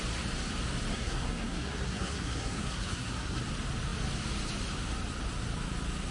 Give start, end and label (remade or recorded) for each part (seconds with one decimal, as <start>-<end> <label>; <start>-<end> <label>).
0.0-0.9 recorded; 0.9-3.4 remade; 3.4-6.1 recorded